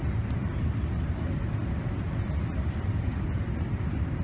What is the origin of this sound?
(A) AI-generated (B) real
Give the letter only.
B